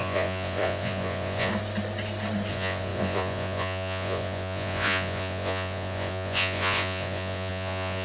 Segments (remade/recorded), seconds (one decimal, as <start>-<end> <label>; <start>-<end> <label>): 0.0-1.5 remade; 1.5-2.5 recorded; 2.5-8.0 remade